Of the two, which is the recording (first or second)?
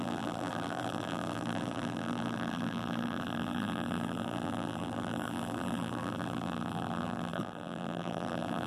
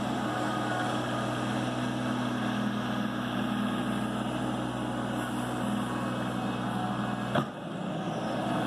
second